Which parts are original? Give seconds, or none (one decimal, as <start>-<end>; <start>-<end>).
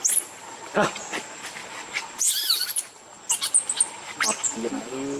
0.0-5.2